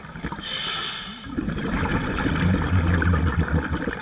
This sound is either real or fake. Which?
real